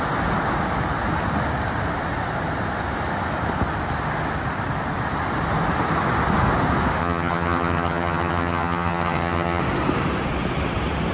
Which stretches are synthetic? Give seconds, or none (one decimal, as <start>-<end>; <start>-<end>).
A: 7.0-9.6